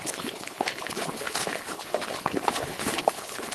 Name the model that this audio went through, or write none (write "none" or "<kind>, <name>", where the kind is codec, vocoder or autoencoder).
codec, HILCodec